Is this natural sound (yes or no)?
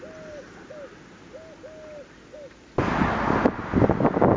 yes